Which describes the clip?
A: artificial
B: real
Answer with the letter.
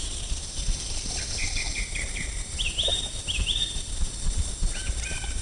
A